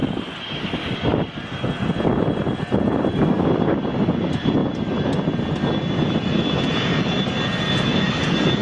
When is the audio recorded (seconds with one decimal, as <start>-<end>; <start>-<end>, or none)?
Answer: 4.6-5.6; 6.9-8.1